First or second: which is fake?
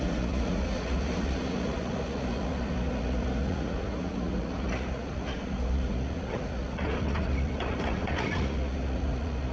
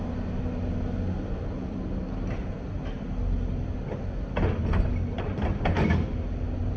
first